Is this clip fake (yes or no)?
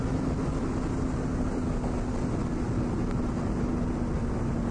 no